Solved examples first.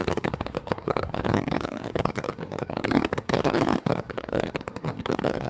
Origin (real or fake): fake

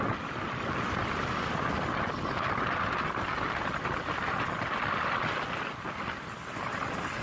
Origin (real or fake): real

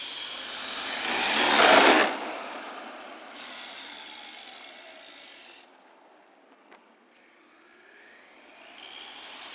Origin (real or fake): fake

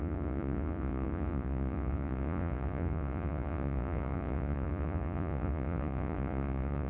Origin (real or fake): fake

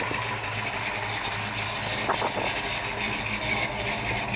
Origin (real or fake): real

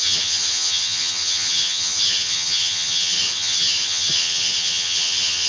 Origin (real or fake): fake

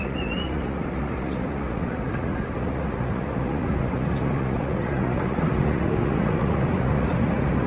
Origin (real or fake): fake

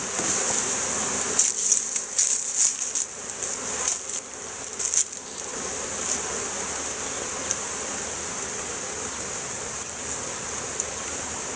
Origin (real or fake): real